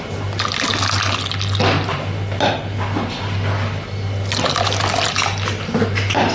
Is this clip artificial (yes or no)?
no